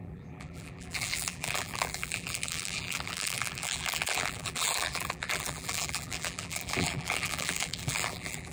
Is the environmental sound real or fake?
fake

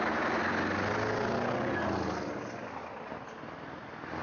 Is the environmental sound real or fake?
real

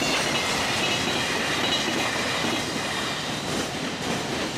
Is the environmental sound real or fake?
real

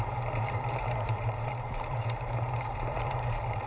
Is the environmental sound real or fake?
fake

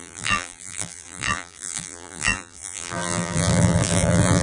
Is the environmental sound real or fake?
fake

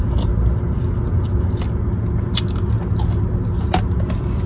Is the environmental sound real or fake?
real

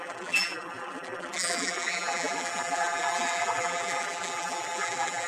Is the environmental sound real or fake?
fake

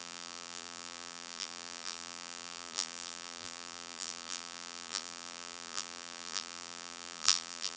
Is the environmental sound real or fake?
fake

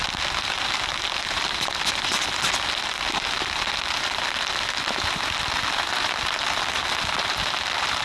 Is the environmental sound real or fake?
real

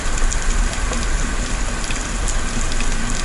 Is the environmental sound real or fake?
real